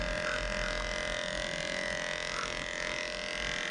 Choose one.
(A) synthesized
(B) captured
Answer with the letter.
B